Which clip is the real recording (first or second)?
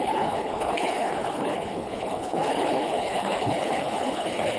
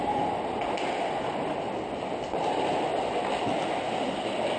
second